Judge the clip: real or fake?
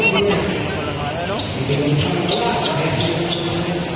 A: real